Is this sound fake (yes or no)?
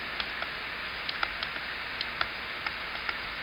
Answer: no